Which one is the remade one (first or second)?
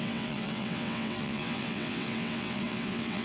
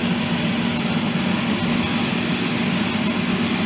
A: first